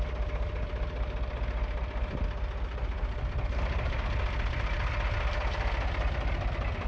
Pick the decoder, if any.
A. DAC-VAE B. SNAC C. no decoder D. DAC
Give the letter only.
C